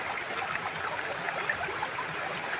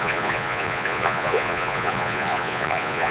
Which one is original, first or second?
first